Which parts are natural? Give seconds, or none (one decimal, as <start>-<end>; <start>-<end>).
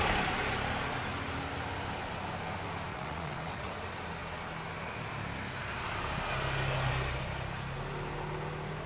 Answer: 0.0-2.9; 3.7-8.9